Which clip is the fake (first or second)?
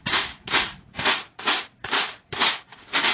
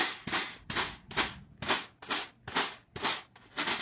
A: first